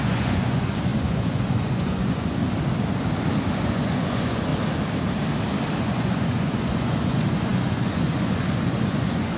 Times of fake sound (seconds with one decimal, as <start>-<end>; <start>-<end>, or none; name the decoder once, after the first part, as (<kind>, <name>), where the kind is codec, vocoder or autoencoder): 0.0-2.4 (vocoder, Vocos); 3.5-4.5; 5.8-9.4